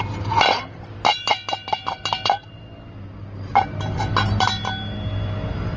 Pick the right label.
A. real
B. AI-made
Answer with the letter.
A